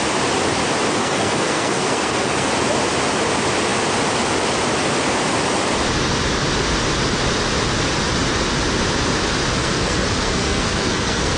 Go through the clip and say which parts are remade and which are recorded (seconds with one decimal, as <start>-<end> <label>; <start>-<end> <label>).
0.0-1.0 recorded; 1.0-2.5 remade; 2.5-9.6 recorded; 9.6-11.4 remade